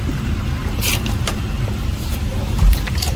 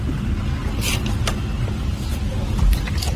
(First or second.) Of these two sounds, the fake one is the first